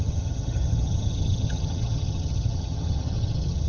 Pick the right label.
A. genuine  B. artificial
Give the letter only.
B